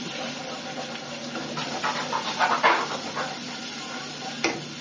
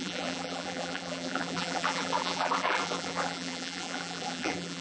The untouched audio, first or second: first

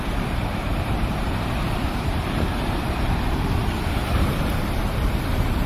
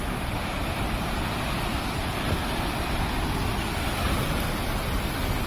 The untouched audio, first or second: second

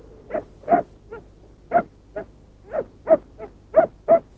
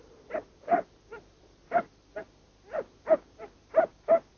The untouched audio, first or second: first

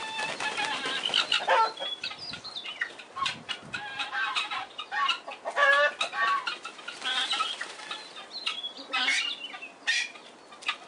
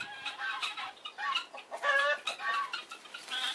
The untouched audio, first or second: first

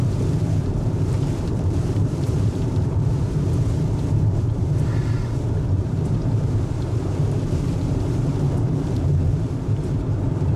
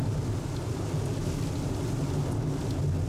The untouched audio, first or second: second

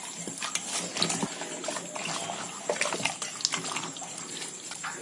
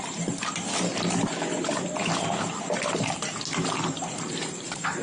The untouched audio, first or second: first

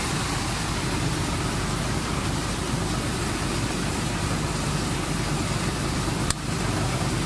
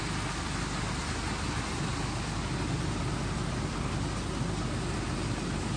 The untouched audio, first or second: second